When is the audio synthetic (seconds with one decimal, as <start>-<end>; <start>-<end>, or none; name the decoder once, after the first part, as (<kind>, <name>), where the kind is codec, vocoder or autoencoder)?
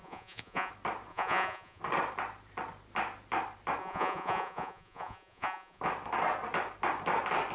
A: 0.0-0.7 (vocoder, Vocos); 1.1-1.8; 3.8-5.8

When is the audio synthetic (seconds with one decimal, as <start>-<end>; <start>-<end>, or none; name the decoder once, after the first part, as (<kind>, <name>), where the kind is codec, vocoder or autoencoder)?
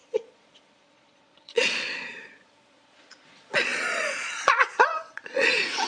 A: 0.0-5.9 (vocoder, Vocos)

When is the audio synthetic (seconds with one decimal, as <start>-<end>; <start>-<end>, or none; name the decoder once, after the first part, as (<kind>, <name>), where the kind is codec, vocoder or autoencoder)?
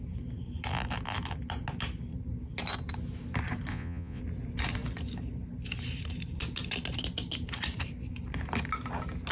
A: 3.7-4.2 (vocoder, Vocos)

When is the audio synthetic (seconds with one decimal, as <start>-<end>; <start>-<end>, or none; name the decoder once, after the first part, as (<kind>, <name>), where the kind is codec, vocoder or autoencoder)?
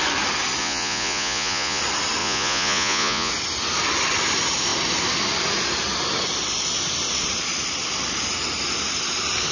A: 0.6-1.8 (vocoder, Vocos); 2.2-3.3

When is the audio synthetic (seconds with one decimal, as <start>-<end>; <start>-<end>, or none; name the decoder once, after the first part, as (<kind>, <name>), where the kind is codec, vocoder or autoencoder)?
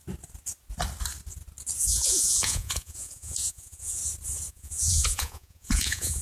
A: 1.8-4.0 (vocoder, Vocos); 4.5-6.2